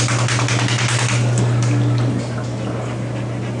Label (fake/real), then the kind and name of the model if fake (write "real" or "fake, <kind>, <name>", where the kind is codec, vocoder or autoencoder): real